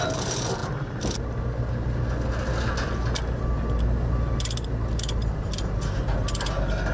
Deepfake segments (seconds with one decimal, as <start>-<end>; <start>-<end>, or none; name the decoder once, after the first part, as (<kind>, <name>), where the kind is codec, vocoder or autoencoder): none